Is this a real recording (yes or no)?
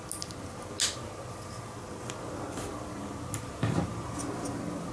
yes